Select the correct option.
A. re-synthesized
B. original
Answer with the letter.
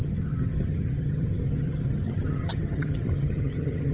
A